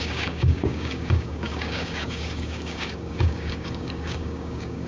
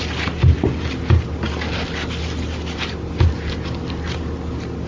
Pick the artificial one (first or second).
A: first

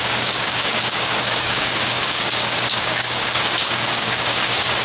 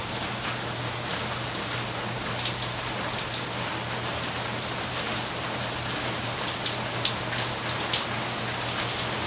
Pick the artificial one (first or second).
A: first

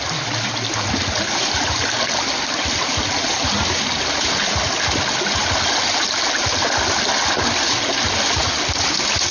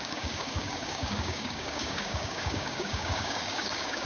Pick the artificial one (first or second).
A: second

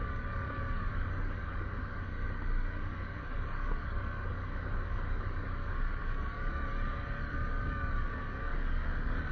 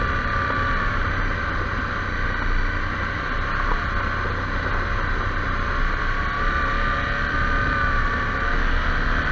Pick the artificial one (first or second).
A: first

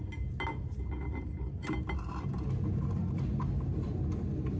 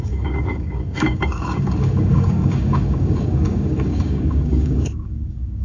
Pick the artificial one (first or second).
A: second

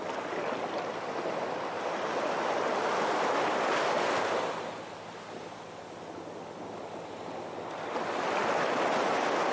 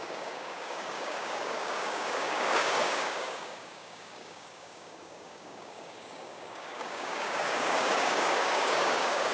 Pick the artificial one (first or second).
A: second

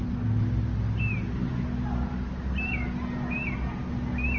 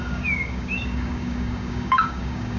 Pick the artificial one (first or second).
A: second